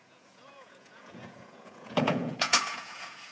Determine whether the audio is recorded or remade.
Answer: remade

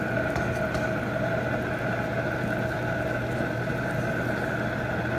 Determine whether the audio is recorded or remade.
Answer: recorded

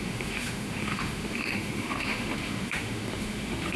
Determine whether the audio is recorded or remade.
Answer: remade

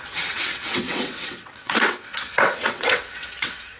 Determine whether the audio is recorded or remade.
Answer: remade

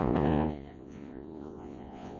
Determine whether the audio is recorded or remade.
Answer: remade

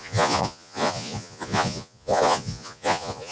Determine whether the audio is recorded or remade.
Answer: remade